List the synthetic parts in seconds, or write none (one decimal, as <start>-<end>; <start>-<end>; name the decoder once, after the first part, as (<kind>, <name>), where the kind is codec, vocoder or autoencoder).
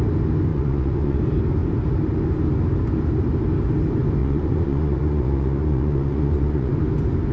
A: 0.5-1.2 (vocoder, Vocos); 4.2-6.7